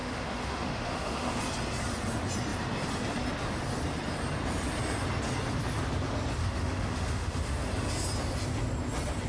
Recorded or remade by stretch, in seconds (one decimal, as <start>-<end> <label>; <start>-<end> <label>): 0.0-1.4 remade; 1.4-6.4 recorded; 6.4-7.7 remade; 7.7-9.3 recorded